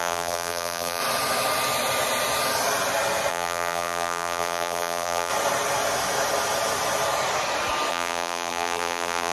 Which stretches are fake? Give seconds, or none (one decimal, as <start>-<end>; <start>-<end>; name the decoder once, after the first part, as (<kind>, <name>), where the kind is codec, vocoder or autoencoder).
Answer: 0.0-1.0 (vocoder, BigVGAN v2); 3.3-5.3; 7.9-9.3